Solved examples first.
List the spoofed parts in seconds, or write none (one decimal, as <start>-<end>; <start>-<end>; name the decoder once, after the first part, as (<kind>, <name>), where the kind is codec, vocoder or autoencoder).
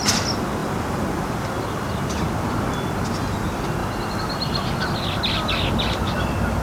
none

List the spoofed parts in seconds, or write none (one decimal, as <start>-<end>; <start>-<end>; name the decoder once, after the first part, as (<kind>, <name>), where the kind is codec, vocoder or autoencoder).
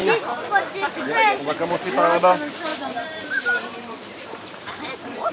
2.7-5.3 (vocoder, BigVGAN v2)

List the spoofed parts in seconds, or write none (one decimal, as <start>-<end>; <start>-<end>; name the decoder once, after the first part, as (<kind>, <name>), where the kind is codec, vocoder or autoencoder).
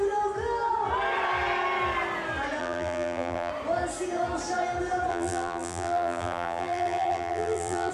2.6-3.5 (vocoder, BigVGAN v2); 5.1-7.9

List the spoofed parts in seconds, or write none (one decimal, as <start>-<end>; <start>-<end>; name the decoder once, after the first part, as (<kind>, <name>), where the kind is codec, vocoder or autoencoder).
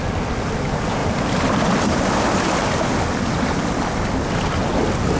1.0-1.9 (vocoder, BigVGAN v2)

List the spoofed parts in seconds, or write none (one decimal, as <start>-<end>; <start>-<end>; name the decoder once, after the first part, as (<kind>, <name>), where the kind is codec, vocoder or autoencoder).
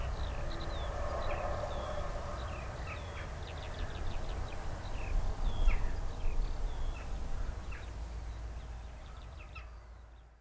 9.0-9.6 (vocoder, BigVGAN v2)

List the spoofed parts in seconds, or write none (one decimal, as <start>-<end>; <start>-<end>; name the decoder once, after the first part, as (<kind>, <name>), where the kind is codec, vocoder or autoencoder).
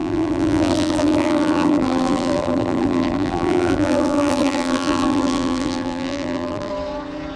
0.0-6.7 (vocoder, BigVGAN v2)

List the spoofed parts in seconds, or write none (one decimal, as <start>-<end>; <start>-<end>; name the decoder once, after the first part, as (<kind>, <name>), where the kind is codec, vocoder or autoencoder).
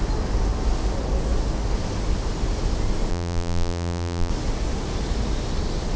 3.1-4.3 (vocoder, BigVGAN v2)